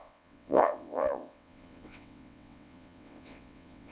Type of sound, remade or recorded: remade